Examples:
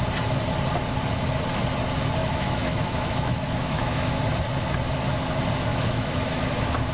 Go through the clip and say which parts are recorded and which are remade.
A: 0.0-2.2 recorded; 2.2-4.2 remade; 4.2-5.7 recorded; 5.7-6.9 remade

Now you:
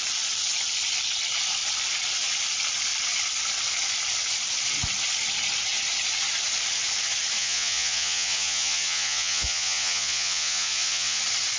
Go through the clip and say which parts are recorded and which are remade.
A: 0.0-7.4 recorded; 7.4-11.2 remade; 11.2-11.6 recorded

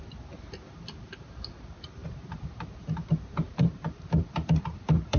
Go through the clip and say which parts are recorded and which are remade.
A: 0.0-2.0 recorded; 2.0-5.2 remade